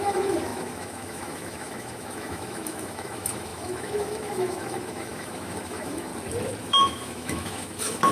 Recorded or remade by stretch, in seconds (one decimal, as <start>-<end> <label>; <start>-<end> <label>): 0.0-6.1 remade; 6.1-6.6 recorded; 6.6-8.1 remade